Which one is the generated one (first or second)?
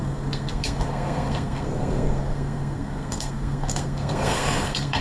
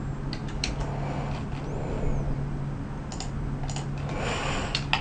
first